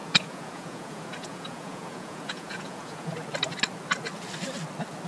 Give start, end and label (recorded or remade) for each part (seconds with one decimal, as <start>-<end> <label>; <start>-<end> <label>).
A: 0.0-3.1 remade; 3.1-5.1 recorded